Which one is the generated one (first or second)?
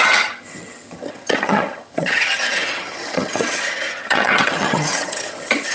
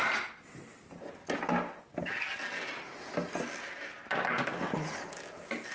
first